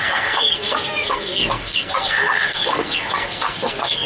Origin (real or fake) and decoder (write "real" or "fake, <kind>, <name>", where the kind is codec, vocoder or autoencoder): fake, codec, SNAC